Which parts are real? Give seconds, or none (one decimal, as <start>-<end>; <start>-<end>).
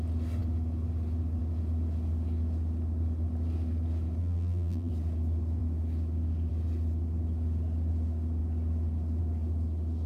0.0-4.2; 4.9-10.1